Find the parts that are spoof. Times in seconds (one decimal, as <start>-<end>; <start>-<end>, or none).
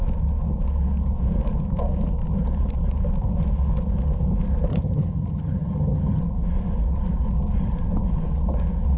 4.7-6.2